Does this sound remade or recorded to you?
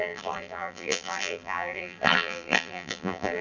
remade